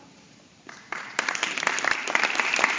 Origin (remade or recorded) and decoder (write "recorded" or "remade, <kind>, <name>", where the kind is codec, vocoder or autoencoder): remade, vocoder, BigVGAN v2